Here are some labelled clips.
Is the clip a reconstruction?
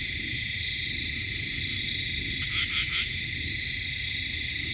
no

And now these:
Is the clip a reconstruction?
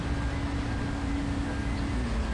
no